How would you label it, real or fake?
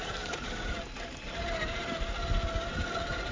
real